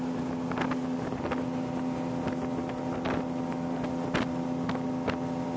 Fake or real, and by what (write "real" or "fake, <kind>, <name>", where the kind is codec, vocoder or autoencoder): real